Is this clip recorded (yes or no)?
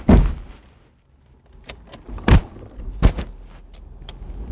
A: yes